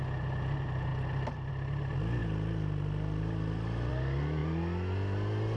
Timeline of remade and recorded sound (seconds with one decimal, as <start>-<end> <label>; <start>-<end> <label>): 0.0-5.6 recorded